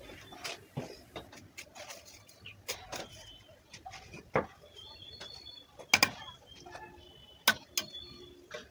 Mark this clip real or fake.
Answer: real